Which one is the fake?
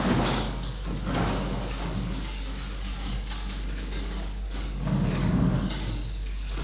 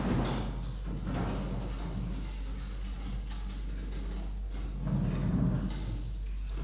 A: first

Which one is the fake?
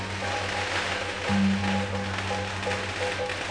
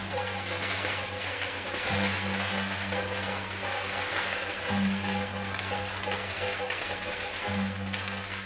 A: second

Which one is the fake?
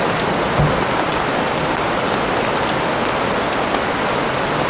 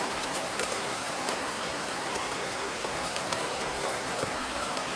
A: second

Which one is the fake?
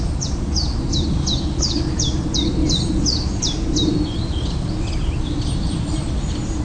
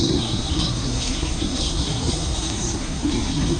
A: second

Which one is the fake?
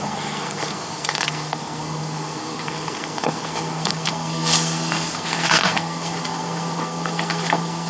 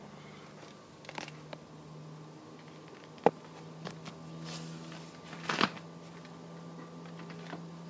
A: first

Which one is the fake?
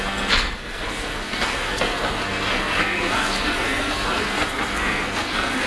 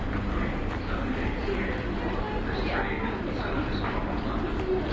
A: first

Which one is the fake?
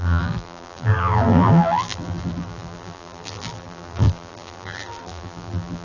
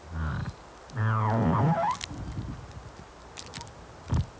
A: first